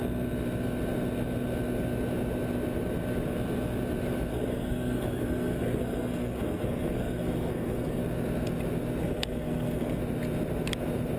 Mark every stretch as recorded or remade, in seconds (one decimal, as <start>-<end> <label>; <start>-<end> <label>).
0.0-4.3 recorded; 4.3-8.0 remade; 8.0-9.0 recorded; 9.0-10.0 remade; 10.0-11.2 recorded